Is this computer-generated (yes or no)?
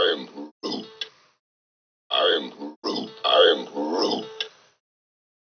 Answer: no